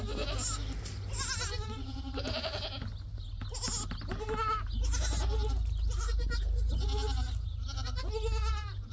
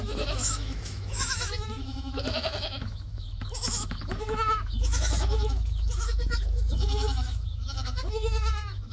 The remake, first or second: second